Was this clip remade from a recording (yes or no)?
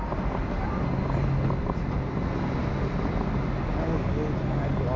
no